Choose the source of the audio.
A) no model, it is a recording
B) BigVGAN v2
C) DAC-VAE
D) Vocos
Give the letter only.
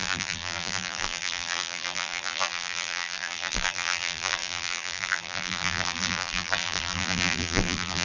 B